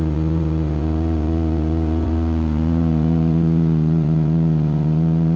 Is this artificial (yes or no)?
yes